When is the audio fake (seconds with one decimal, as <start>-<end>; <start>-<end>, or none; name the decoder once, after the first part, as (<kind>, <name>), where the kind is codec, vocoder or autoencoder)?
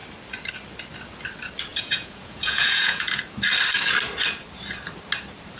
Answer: 1.7-3.2 (vocoder, Vocos)